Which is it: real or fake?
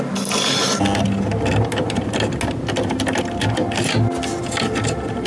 real